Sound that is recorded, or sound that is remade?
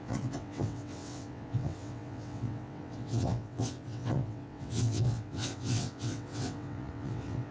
remade